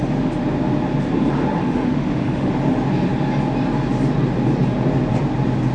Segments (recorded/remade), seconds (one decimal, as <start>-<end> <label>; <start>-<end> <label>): 0.0-1.6 recorded; 1.6-2.5 remade; 2.5-5.7 recorded